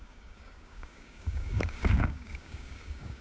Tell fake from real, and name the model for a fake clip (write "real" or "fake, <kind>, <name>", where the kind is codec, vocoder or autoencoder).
fake, codec, DAC